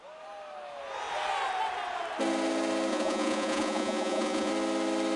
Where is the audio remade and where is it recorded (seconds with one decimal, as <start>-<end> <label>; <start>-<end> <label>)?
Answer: 0.0-2.9 recorded; 2.9-4.5 remade; 4.5-5.2 recorded